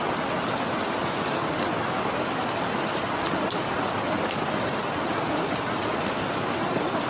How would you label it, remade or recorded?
recorded